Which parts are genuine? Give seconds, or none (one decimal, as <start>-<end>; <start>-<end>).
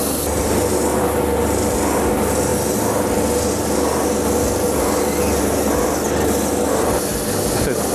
0.0-7.9